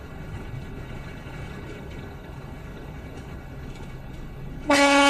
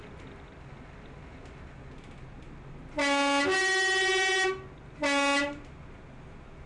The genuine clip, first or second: second